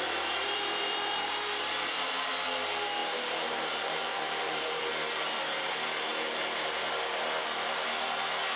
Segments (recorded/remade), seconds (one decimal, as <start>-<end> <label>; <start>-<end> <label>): 0.0-0.4 recorded; 0.4-2.3 remade; 2.3-3.0 recorded; 3.0-4.8 remade; 4.8-8.6 recorded

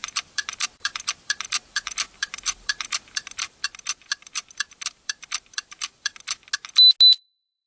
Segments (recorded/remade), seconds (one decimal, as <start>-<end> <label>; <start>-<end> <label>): 0.0-6.5 remade; 6.5-7.1 recorded; 7.1-7.7 remade